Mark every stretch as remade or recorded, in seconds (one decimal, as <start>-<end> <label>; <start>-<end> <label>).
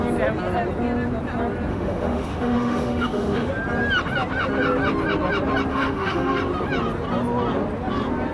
0.0-1.7 recorded; 1.7-3.5 remade; 3.5-5.7 recorded; 5.7-6.4 remade; 6.4-8.3 recorded